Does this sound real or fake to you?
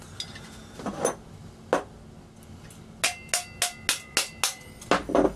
real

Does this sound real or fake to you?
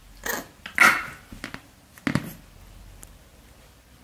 real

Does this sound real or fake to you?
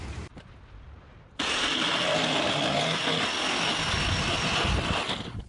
real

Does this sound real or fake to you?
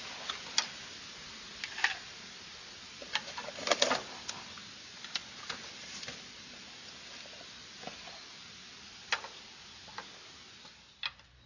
real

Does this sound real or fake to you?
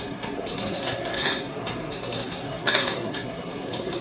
fake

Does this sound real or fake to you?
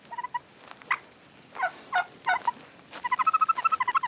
real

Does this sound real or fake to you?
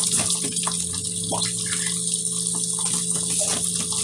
real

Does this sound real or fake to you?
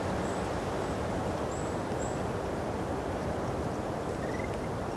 real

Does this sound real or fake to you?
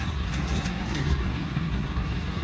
fake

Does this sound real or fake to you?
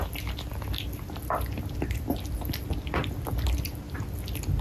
real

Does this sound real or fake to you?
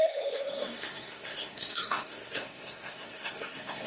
fake